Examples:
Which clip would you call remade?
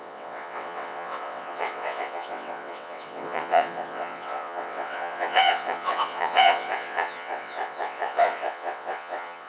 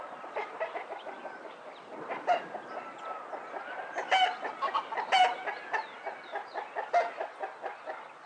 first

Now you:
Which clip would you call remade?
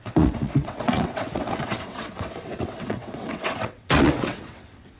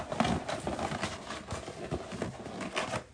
first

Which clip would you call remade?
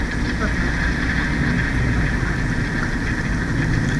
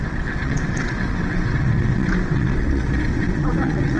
second